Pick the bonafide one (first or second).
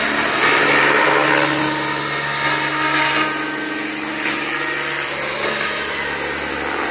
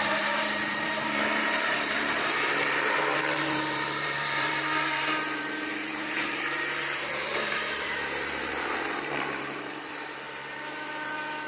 first